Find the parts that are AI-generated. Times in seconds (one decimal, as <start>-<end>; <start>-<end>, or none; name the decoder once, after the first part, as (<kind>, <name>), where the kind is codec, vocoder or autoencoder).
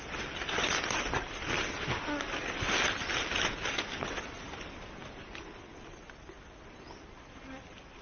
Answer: none